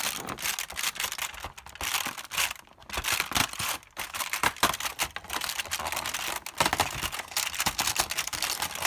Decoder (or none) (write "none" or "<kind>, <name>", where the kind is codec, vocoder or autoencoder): none